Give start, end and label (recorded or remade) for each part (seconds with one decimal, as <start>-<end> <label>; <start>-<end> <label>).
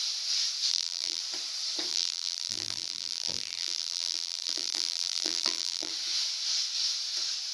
0.0-0.7 recorded; 0.7-1.2 remade; 1.2-1.9 recorded; 1.9-5.9 remade; 5.9-7.5 recorded